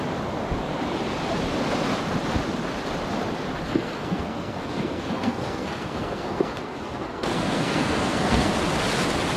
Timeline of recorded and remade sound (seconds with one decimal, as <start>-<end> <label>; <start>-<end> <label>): 0.0-3.6 recorded; 3.6-8.5 remade; 8.5-9.4 recorded